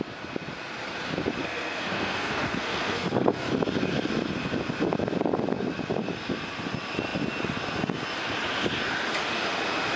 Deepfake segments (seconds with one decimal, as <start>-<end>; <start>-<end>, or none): 1.4-3.5